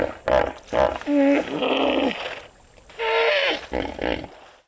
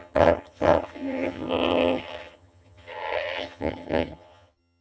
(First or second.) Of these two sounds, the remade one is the second